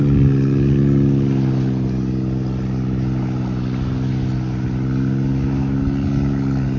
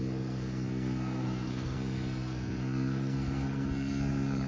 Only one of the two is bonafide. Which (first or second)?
first